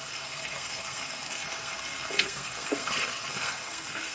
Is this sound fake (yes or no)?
yes